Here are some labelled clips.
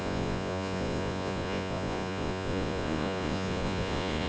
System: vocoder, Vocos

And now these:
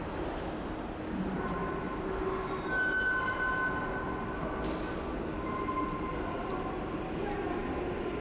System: none